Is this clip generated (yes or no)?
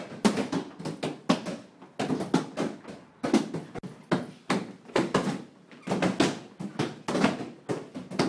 no